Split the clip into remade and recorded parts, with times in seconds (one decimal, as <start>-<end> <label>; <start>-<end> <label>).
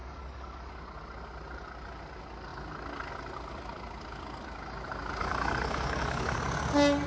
0.0-0.7 remade; 0.7-5.2 recorded; 5.2-6.4 remade; 6.4-7.1 recorded